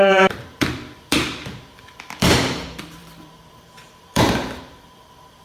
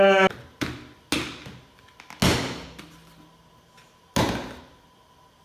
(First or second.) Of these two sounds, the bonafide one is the second